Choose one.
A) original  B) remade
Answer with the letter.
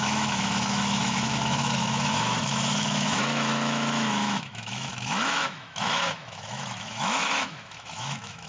B